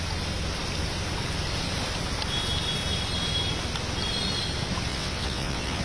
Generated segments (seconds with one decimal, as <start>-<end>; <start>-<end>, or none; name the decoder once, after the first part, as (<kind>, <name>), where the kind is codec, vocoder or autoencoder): 4.9-5.8 (vocoder, WaveNeXt)